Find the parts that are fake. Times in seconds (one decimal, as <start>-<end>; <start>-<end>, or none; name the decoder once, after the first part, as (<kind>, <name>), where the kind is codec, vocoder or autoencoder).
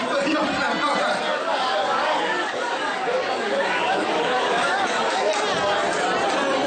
1.3-5.3 (codec, DAC)